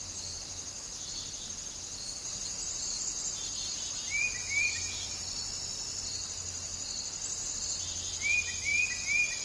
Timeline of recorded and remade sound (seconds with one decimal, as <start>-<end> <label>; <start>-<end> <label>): 0.0-9.4 recorded